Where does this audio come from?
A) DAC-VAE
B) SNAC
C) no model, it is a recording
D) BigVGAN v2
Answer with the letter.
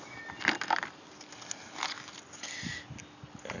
C